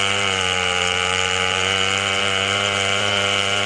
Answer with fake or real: fake